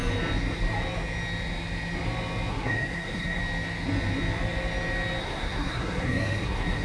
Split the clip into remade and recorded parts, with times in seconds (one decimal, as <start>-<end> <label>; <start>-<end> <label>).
0.0-2.5 recorded; 2.5-3.4 remade; 3.4-5.2 recorded; 5.2-6.8 remade